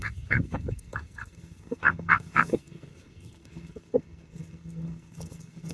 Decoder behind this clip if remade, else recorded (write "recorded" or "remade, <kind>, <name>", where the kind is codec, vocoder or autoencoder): remade, codec, SNAC